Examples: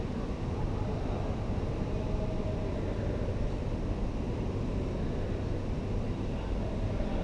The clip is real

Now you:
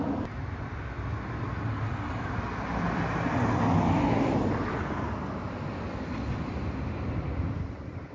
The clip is real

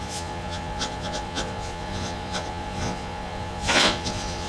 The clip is fake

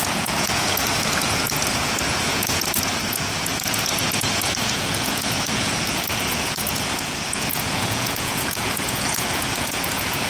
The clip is fake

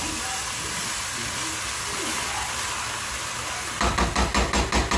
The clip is real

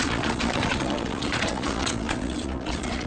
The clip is fake